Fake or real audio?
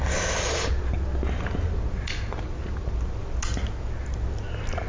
real